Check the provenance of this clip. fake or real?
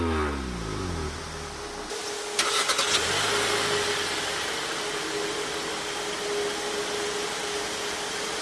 real